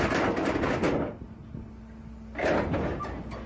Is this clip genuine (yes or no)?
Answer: yes